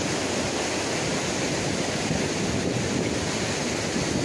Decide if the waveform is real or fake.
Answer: real